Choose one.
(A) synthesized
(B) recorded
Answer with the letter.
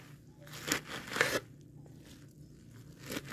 B